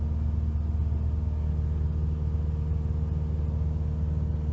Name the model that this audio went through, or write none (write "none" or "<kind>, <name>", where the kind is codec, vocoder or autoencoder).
none